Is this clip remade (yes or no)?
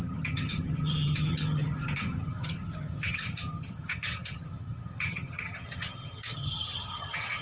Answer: yes